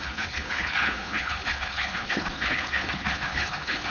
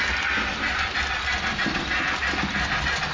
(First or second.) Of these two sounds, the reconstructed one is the first